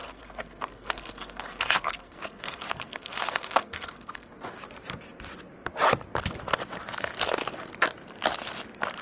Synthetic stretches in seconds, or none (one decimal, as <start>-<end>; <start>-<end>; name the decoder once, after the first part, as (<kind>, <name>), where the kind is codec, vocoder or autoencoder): 0.0-4.3 (codec, SNAC)